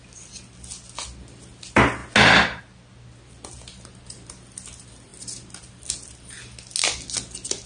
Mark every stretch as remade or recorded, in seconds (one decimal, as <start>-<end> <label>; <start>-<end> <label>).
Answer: 0.0-7.7 recorded